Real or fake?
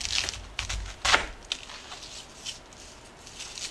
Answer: real